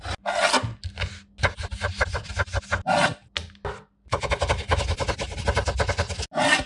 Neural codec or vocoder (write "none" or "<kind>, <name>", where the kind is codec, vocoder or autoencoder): none